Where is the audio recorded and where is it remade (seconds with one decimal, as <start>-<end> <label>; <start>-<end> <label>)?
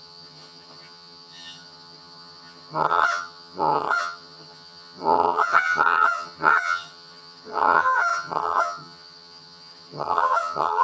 0.0-10.8 remade